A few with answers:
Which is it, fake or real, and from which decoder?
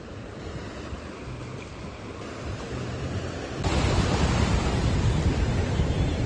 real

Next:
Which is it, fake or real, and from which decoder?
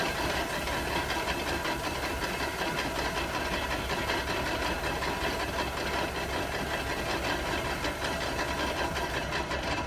real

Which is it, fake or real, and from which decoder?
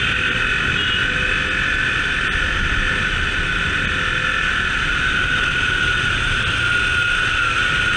real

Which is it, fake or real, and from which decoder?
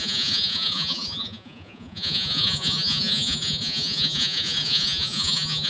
fake, vocoder, Vocos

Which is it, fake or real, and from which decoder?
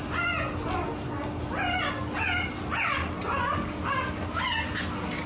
real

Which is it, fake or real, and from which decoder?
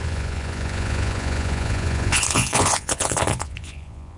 fake, vocoder, Vocos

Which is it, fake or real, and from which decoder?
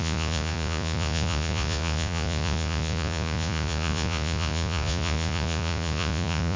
fake, vocoder, Vocos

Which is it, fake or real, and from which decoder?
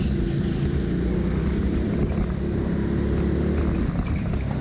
real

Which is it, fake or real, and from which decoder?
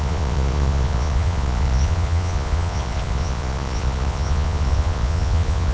fake, vocoder, Vocos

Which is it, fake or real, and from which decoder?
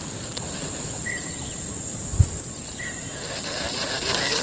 real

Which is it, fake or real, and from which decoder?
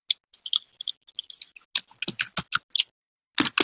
real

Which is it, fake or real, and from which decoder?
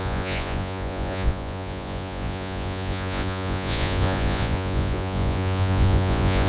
fake, vocoder, Vocos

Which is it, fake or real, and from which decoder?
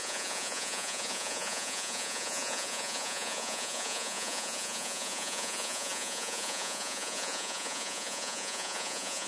fake, vocoder, Vocos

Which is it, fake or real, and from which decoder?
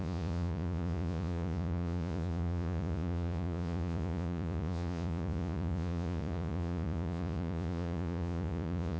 fake, vocoder, Vocos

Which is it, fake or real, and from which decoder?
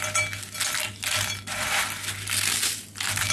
real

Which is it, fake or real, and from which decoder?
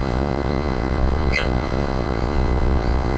fake, vocoder, Vocos